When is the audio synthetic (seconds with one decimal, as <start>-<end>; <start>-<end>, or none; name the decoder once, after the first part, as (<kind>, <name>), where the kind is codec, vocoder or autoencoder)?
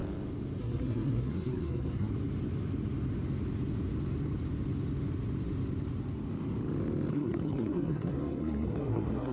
0.6-2.1 (codec, SNAC); 7.1-9.3